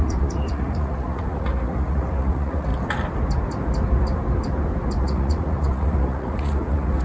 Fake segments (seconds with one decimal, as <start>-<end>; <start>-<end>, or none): 0.0-2.7; 5.0-7.0